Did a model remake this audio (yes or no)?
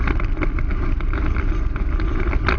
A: no